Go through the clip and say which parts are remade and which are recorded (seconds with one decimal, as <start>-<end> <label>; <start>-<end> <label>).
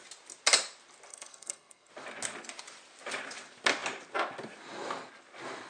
0.0-1.1 recorded; 1.1-1.9 remade; 1.9-5.7 recorded